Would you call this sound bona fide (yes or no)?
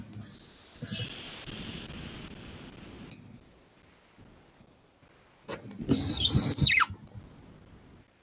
yes